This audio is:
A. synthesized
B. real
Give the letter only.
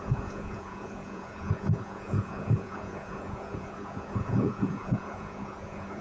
A